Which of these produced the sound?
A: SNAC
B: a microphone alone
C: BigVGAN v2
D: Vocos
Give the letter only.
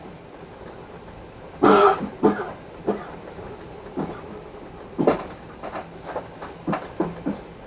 B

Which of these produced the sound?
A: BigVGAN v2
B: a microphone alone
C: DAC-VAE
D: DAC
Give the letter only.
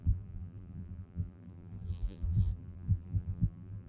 A